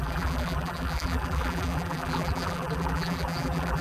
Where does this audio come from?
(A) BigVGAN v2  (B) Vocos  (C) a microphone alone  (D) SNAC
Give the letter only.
A